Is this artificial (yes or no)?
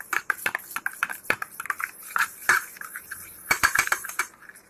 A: yes